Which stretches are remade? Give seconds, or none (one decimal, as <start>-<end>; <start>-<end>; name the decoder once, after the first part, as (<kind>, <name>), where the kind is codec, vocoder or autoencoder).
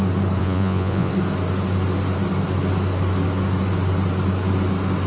0.4-1.1 (vocoder, Vocos)